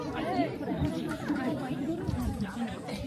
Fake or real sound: fake